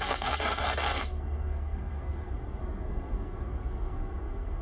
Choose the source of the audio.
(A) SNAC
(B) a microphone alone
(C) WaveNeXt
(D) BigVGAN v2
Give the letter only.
A